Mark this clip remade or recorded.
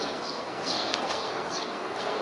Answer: remade